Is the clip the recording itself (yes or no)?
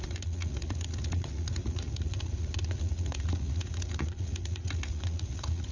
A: no